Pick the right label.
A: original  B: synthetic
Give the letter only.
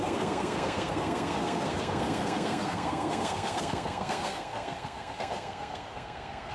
B